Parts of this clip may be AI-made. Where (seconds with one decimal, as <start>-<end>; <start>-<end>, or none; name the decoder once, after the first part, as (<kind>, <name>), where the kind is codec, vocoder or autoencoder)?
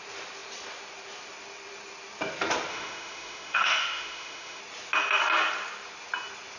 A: 2.7-4.6 (autoencoder, DAC-VAE)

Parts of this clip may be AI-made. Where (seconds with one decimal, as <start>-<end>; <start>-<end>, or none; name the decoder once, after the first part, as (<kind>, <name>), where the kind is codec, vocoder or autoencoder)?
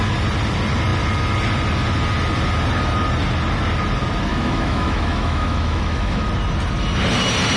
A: 4.3-6.3 (autoencoder, DAC-VAE)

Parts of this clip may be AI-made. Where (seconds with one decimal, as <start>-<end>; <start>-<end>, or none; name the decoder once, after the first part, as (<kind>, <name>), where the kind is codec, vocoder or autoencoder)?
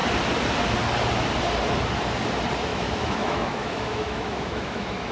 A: 2.7-5.1 (autoencoder, DAC-VAE)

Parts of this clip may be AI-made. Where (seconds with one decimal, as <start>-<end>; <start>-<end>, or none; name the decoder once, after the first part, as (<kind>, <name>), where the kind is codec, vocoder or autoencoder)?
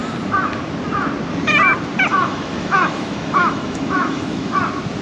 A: 2.1-4.6 (autoencoder, DAC-VAE)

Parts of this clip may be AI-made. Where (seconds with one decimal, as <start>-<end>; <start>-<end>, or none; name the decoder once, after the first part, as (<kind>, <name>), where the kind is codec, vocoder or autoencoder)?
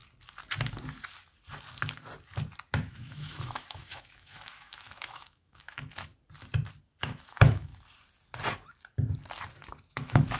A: 2.8-6.1 (autoencoder, DAC-VAE); 7.0-7.7; 9.9-10.4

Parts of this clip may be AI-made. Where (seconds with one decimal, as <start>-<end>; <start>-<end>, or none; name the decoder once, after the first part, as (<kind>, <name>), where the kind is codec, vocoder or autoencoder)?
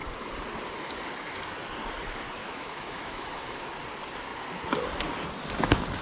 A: 2.4-3.7 (autoencoder, DAC-VAE)